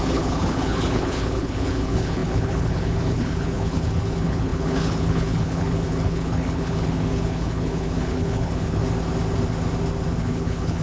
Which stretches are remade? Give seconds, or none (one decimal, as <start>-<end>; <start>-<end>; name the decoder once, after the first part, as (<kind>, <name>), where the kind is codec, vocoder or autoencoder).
0.0-8.8 (codec, HILCodec); 10.2-10.8